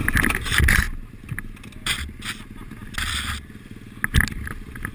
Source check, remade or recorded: recorded